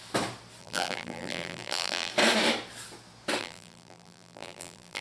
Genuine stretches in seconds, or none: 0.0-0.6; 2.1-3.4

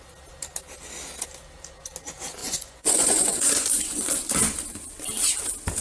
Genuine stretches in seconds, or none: 0.0-2.4; 4.1-5.8

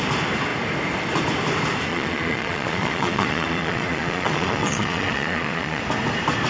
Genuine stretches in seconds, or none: 0.0-1.9; 5.8-6.5

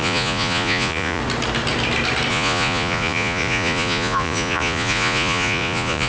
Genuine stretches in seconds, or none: 1.2-2.3

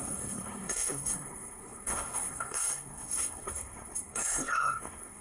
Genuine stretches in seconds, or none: none

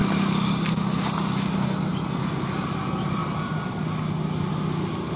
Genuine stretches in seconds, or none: 0.0-5.2